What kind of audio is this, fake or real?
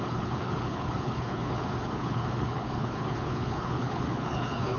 fake